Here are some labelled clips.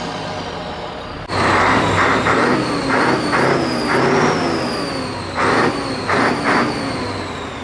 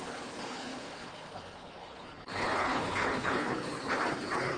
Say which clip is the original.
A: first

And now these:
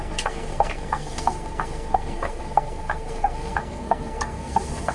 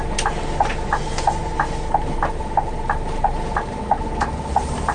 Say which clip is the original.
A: second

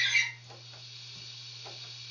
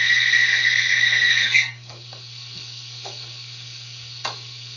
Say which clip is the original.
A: first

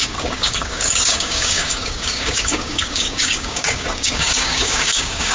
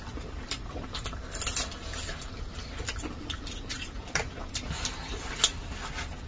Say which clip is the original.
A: second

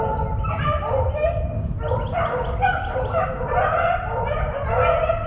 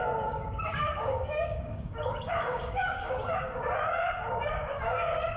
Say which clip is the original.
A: first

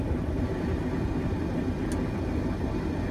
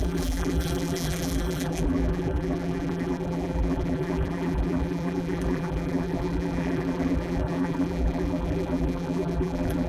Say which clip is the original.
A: first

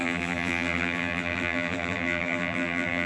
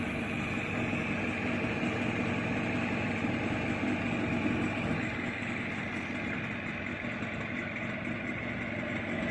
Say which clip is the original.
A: second